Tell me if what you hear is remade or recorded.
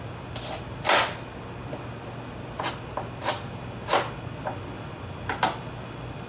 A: recorded